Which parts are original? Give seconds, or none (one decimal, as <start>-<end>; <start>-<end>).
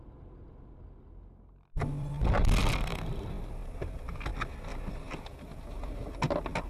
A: 0.0-6.7